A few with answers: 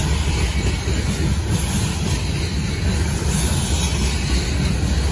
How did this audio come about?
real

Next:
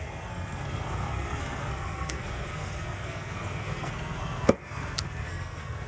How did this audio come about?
fake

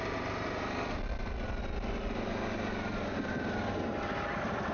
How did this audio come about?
real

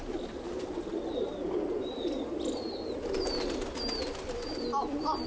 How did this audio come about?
real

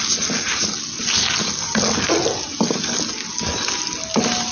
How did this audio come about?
real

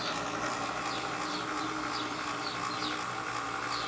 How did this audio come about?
real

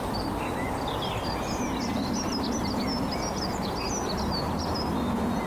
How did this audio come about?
real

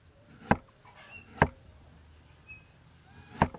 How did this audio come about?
real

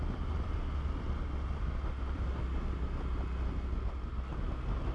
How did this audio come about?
real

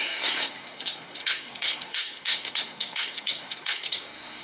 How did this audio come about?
fake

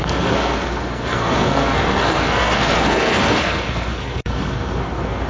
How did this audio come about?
fake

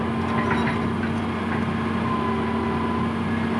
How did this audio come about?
real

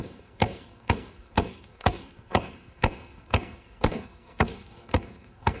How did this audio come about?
fake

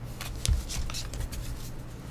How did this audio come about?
real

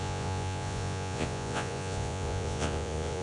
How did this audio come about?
fake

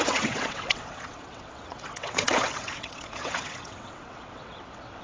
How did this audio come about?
fake